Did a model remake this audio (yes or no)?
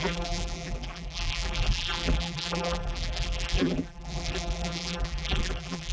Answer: yes